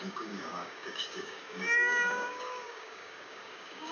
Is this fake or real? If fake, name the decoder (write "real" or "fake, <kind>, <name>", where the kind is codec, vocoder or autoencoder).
fake, codec, DAC